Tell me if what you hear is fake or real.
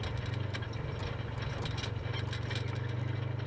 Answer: real